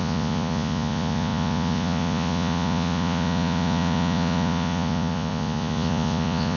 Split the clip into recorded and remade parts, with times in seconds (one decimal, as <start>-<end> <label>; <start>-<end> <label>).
0.0-6.6 remade